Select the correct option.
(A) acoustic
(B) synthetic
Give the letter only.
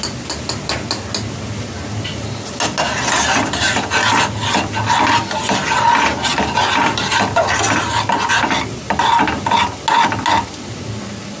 A